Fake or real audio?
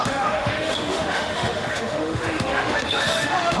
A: fake